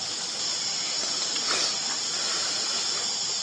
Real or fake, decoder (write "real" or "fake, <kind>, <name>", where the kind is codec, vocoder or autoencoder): real